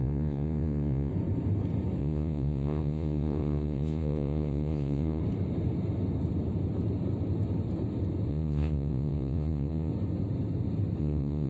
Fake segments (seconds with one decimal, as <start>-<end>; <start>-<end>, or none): 0.0-1.1; 2.0-5.2; 8.3-9.9; 11.0-11.5